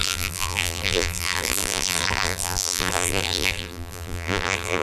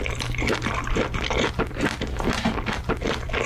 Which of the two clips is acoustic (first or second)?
second